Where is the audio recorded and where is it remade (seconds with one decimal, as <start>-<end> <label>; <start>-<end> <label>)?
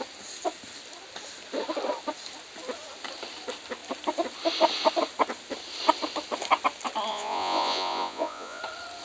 0.0-7.1 recorded; 7.1-8.6 remade; 8.6-9.0 recorded